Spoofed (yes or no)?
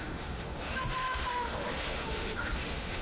yes